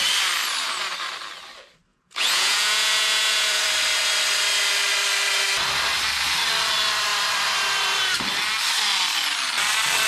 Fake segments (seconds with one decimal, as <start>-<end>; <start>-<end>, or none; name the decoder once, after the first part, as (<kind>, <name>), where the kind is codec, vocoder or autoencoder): 1.9-3.6 (vocoder, Vocos)